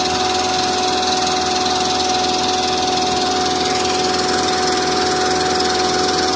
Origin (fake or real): real